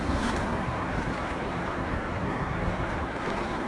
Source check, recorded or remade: remade